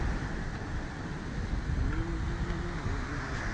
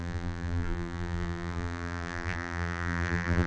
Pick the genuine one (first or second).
first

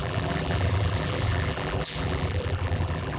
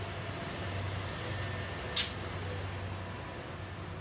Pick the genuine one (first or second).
second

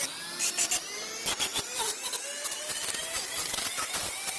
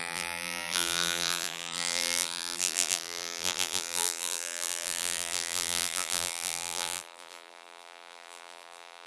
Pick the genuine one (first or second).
first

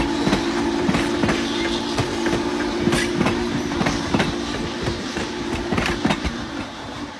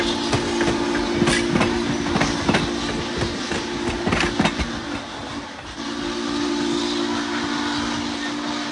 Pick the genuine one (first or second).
second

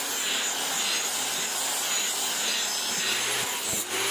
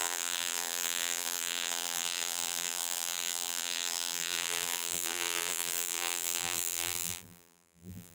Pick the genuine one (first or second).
first